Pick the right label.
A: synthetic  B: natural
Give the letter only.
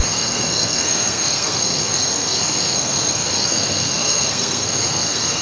A